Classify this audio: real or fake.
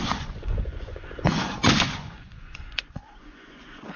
fake